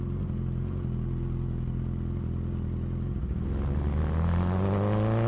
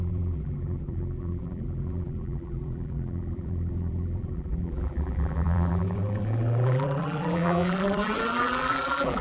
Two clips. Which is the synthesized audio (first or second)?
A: second